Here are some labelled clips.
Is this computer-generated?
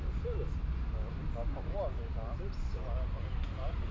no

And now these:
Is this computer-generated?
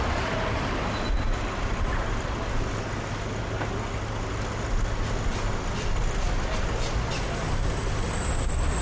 no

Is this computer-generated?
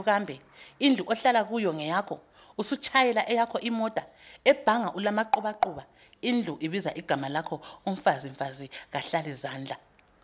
no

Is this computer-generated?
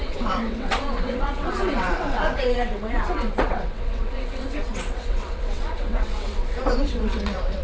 yes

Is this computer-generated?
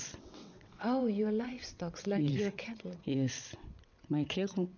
yes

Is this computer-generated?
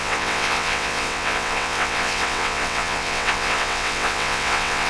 yes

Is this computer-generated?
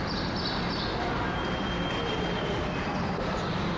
no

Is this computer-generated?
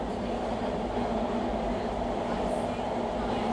no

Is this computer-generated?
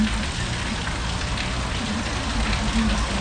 no